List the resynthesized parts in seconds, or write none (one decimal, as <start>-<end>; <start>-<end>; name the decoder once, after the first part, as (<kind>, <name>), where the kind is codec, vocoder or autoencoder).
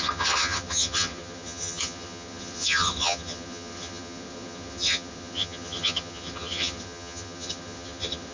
0.0-8.3 (vocoder, HiFi-GAN)